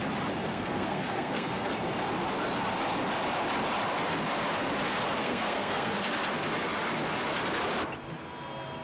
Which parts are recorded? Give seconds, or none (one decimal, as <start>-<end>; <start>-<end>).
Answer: 0.0-0.5; 1.7-5.2; 5.9-8.8